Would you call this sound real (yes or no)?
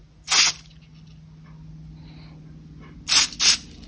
yes